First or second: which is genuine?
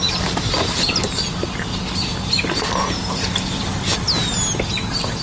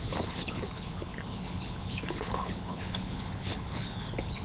first